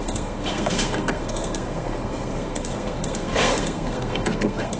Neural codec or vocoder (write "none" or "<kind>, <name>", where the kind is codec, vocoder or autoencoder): codec, SNAC